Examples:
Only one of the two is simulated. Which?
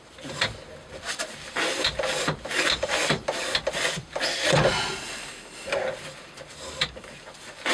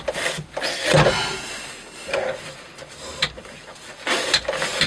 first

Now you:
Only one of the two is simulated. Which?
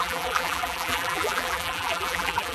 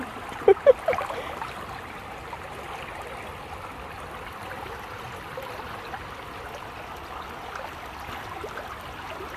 first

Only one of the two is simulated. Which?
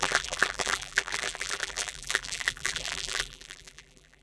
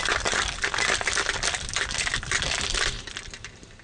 first